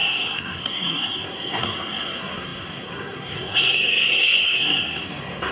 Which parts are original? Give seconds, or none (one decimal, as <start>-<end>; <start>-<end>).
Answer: none